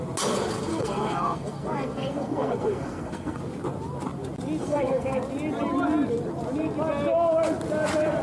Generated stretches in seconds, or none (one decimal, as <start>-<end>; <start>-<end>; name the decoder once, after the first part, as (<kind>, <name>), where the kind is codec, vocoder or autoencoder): 0.7-3.4 (codec, SNAC); 4.6-5.2